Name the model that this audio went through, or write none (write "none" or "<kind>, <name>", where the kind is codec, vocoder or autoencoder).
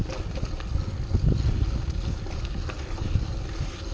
none